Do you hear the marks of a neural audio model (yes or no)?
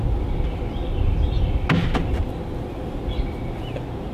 no